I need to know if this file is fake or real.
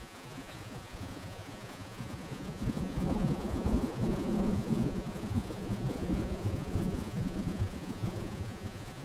fake